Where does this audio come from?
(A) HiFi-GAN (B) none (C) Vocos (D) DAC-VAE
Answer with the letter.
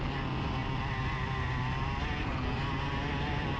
B